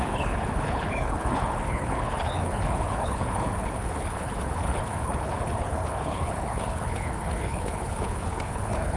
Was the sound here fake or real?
fake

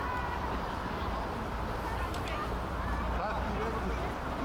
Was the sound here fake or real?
real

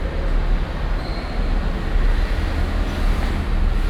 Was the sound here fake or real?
real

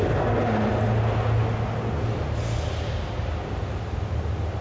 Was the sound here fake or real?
real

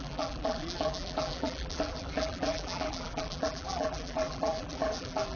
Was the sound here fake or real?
fake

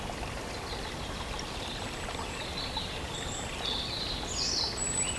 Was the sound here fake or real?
real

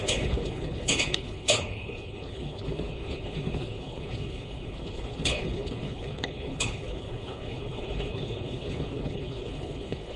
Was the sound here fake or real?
fake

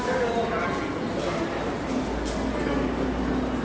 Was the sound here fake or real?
real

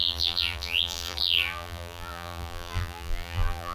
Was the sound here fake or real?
fake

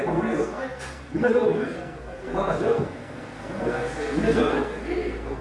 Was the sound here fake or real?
fake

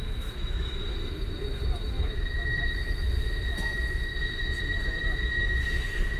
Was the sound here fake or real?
fake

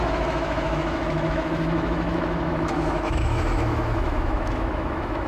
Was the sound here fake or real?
fake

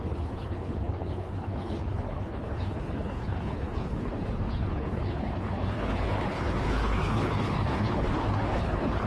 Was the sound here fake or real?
fake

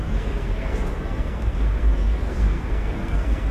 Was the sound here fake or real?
fake